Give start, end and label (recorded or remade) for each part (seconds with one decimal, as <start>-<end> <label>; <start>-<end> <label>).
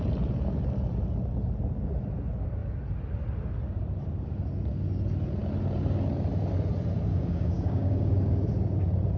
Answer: 0.0-7.1 recorded; 7.1-8.5 remade; 8.5-9.2 recorded